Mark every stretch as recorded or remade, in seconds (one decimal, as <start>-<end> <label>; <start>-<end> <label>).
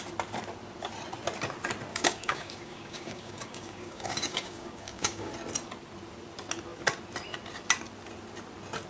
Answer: 0.0-1.9 recorded; 1.9-5.3 remade; 5.3-8.9 recorded